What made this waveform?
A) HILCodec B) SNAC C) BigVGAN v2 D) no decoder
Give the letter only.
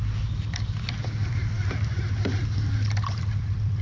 C